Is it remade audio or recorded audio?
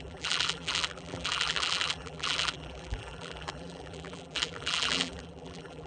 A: remade